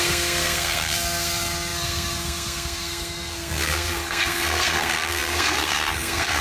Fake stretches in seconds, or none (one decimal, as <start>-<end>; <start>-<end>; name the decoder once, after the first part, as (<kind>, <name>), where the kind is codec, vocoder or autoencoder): 0.0-6.4 (codec, SNAC)